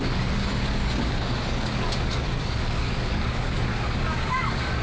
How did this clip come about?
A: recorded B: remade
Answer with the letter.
B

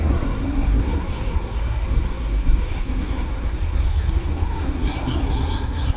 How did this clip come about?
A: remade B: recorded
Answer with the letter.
A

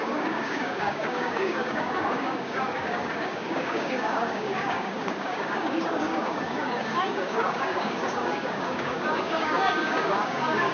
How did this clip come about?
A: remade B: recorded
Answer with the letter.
A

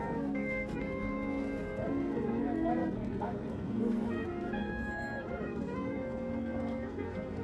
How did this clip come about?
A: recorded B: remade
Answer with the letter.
B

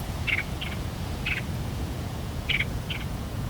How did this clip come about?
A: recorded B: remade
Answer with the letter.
B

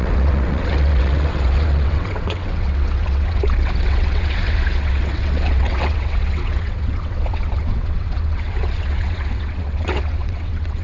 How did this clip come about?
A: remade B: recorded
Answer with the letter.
A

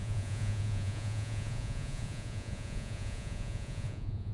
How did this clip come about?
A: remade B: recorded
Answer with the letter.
A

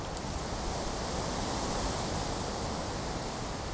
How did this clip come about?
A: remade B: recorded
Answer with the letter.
B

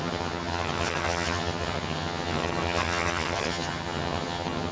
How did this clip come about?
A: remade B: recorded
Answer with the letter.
A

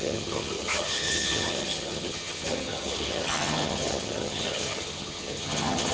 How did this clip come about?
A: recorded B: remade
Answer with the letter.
B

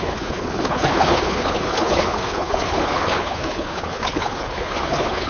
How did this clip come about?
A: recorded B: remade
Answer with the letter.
B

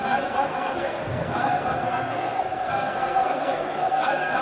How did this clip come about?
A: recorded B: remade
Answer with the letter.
B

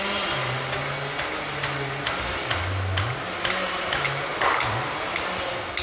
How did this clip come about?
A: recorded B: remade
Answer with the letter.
A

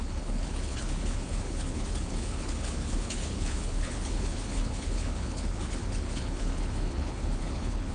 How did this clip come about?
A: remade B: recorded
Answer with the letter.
A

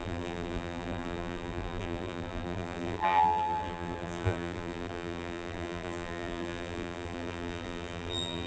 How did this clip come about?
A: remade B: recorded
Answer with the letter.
A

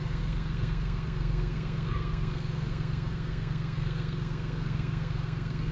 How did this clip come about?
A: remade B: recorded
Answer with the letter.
A